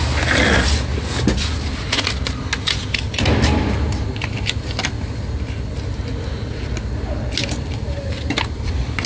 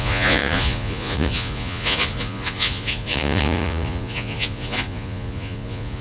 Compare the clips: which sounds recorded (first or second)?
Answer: first